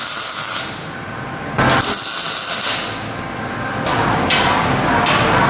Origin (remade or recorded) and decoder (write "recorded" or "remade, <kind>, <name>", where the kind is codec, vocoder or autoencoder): recorded